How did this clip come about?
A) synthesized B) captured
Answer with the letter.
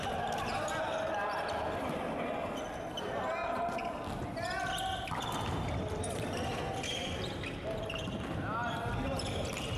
B